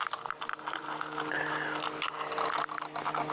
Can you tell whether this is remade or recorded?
recorded